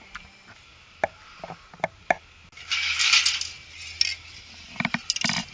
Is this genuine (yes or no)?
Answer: yes